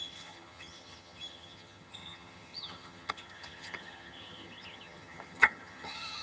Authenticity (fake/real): fake